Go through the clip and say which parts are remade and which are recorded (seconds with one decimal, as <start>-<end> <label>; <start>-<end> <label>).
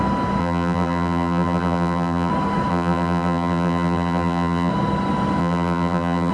0.0-0.4 recorded; 0.4-2.3 remade; 2.3-2.7 recorded; 2.7-4.7 remade; 4.7-5.4 recorded; 5.4-6.3 remade